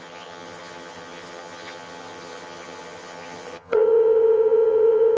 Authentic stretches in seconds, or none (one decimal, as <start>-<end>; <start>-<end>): none